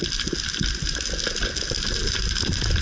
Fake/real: real